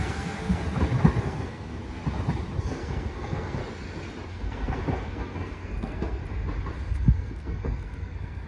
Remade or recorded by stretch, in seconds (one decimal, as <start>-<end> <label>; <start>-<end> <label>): 0.0-0.6 remade; 0.6-1.2 recorded; 1.2-1.8 remade; 1.8-2.6 recorded; 2.6-3.6 remade; 3.6-4.3 recorded; 4.3-6.2 remade; 6.2-6.9 recorded; 6.9-8.5 remade